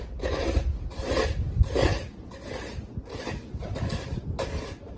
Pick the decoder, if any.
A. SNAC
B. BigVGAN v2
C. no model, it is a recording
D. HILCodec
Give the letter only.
C